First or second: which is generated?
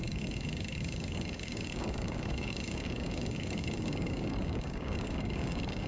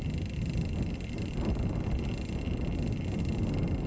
first